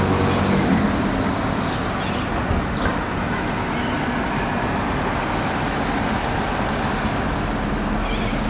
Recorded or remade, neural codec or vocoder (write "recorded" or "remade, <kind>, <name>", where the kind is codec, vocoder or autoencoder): recorded